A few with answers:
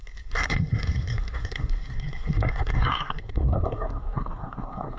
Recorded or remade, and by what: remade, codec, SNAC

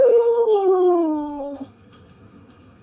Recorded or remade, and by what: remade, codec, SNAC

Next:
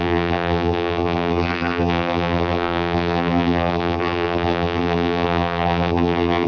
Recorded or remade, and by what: remade, vocoder, BigVGAN v2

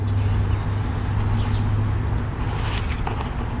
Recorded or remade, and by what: recorded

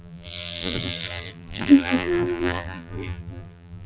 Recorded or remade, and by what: remade, vocoder, BigVGAN v2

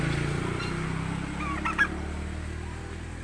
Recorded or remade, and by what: recorded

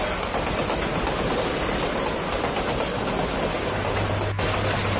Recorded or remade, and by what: recorded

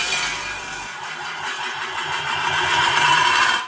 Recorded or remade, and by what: remade, vocoder, BigVGAN v2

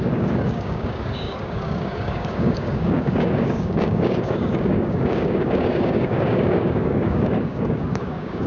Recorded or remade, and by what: remade, codec, DAC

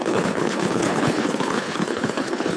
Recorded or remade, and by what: remade, codec, HILCodec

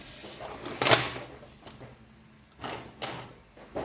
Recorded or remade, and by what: recorded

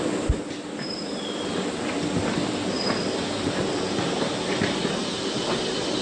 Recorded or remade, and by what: remade, vocoder, BigVGAN v2